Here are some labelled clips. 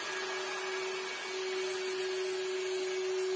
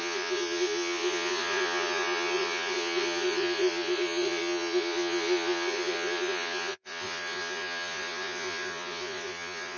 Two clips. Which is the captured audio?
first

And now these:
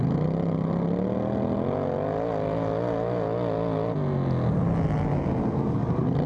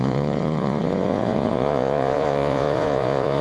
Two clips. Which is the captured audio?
first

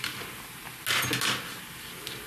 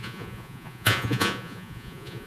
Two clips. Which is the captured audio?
first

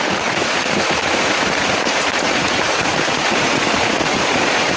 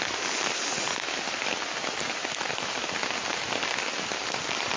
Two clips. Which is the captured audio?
second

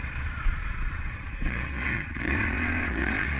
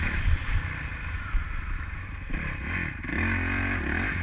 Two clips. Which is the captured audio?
second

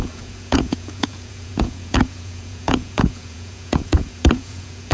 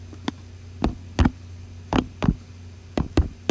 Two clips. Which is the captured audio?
second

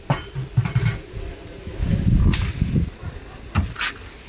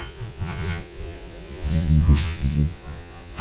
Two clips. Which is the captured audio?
first